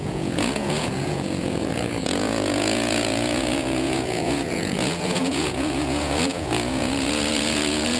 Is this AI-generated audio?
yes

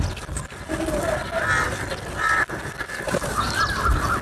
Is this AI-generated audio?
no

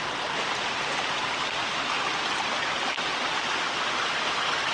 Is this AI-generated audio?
no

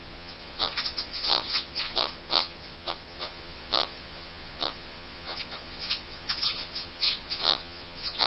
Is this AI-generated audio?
yes